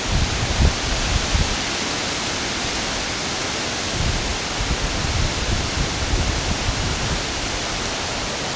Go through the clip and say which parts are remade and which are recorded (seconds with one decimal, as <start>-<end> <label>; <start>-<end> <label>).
0.0-4.3 recorded; 4.3-6.5 remade; 6.5-8.6 recorded